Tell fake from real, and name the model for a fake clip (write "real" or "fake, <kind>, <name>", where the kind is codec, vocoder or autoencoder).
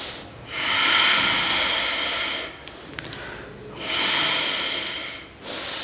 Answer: real